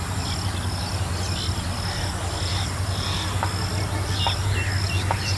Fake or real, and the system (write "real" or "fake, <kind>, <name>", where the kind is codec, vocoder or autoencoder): real